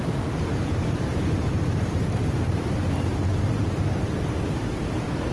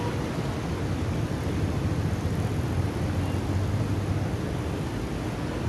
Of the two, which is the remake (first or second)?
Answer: first